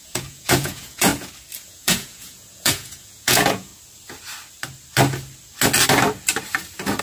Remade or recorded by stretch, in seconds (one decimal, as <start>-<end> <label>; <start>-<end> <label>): 0.0-1.1 remade; 1.1-1.6 recorded; 1.6-3.7 remade; 3.7-7.0 recorded